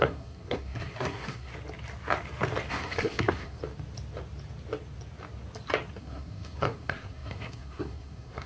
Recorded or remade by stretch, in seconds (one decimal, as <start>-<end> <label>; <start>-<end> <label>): 0.0-1.5 remade; 1.5-2.7 recorded; 2.7-3.6 remade; 3.6-6.0 recorded; 6.0-8.5 remade